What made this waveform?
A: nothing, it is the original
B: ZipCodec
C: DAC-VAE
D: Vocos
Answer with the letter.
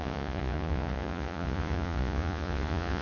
D